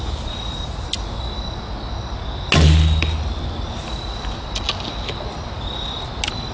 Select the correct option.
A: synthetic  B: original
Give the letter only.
B